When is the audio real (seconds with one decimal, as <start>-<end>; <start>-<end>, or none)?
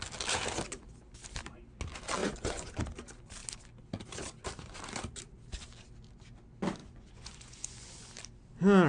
0.0-2.2; 2.8-6.8; 8.1-8.9